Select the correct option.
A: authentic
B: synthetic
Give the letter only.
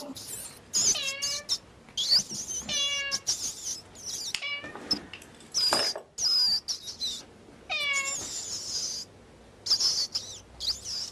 A